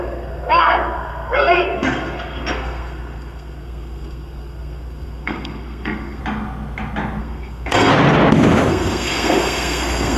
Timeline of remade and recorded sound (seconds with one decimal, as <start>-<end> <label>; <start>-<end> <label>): 0.0-6.2 remade; 6.2-7.2 recorded; 7.2-7.9 remade; 7.9-8.7 recorded; 8.7-10.2 remade